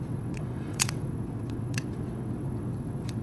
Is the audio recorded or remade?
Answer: remade